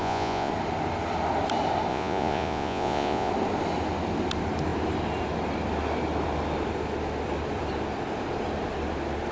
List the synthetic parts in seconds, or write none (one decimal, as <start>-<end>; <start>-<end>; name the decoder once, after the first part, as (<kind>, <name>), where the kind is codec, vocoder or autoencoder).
0.0-0.5 (vocoder, Vocos); 1.9-3.3